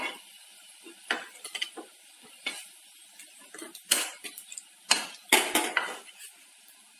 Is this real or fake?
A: real